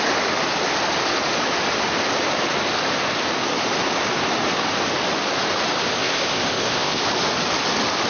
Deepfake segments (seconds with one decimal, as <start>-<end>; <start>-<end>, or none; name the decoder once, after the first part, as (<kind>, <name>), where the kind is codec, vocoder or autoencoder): 6.0-7.0 (codec, ZipCodec)